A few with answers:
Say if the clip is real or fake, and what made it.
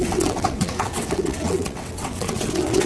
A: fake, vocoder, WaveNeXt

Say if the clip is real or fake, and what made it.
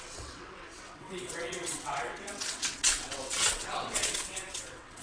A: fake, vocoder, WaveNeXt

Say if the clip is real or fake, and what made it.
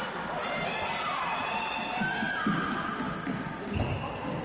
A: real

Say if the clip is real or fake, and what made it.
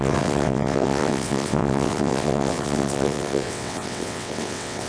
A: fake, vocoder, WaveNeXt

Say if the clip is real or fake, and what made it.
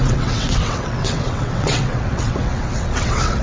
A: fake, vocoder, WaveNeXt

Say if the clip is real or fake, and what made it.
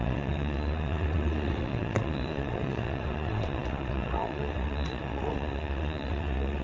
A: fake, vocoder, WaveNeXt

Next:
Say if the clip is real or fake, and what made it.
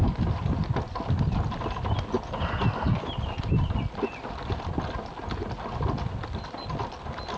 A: real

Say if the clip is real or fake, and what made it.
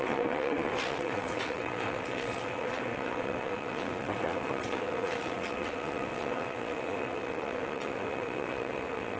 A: fake, vocoder, WaveNeXt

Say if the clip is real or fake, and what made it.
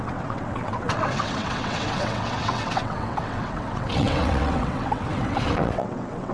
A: fake, vocoder, WaveNeXt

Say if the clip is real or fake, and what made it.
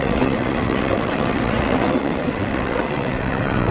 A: fake, vocoder, WaveNeXt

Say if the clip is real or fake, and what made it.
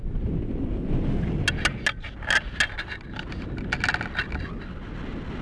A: real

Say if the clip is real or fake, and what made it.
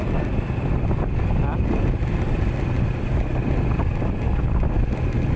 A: real